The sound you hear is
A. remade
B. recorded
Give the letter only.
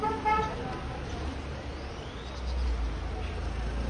B